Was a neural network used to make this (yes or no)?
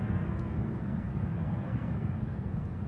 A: yes